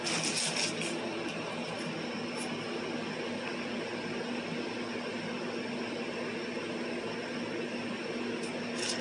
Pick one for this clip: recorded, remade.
recorded